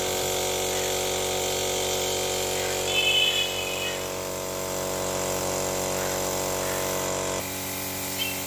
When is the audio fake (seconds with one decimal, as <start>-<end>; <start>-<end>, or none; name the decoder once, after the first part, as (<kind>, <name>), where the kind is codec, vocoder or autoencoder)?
none